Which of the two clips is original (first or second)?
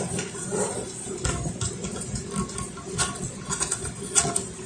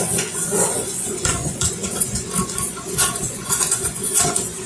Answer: first